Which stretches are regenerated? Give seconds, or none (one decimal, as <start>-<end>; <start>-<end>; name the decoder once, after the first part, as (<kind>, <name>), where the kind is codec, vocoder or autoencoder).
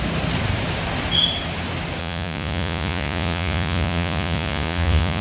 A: 2.0-5.2 (vocoder, Vocos)